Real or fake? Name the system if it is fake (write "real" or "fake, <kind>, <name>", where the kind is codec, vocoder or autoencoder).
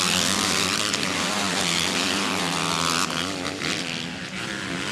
real